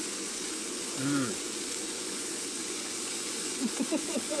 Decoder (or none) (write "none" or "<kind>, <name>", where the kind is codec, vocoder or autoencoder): vocoder, Vocos